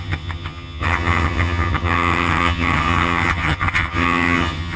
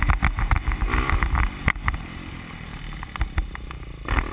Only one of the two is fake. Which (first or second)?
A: first